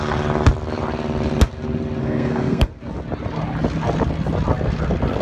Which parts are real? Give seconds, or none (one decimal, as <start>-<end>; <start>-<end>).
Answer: 0.0-2.0; 2.7-5.2